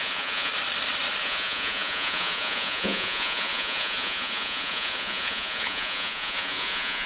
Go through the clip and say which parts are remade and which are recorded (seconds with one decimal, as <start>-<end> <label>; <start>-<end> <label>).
0.0-0.5 remade; 0.5-1.2 recorded; 1.2-7.1 remade